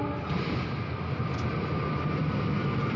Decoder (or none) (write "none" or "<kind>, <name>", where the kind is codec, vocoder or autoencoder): none